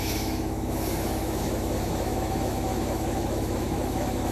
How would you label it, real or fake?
fake